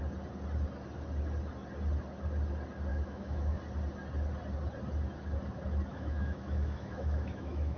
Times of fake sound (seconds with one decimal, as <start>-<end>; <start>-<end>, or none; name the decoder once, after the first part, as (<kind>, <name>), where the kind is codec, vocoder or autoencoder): 2.9-3.6 (autoencoder, DAC-VAE); 5.9-7.8